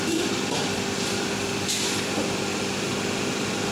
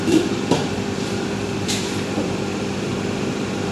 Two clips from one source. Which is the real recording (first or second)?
first